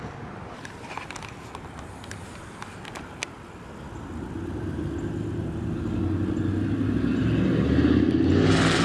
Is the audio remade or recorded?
recorded